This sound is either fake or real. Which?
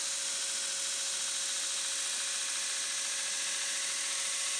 real